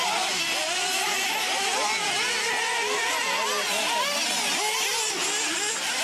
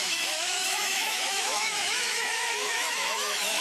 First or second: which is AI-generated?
second